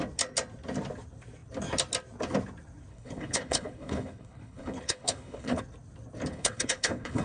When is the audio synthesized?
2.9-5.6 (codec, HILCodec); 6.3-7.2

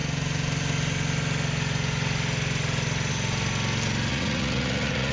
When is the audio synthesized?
4.1-5.1 (vocoder, Vocos)

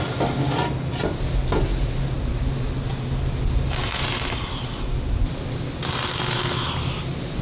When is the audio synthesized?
none

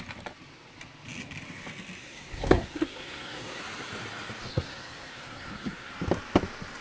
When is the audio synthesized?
2.0-3.6 (codec, SNAC); 4.5-5.9

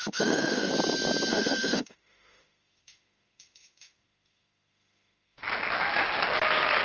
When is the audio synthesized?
0.0-0.7 (autoencoder, DAC-VAE); 1.3-5.4

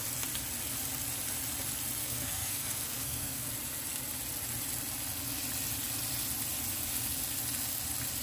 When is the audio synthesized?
2.0-3.5 (codec, SNAC)